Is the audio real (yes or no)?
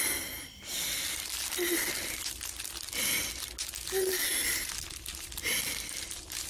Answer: yes